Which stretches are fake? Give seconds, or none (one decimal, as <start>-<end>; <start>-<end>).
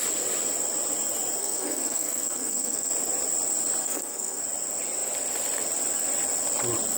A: 1.4-2.9; 3.8-4.4